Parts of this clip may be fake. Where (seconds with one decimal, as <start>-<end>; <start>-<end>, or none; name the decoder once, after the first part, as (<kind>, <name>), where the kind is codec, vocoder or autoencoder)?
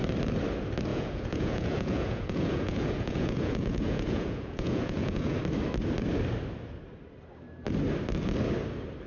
0.9-5.4 (vocoder, Vocos)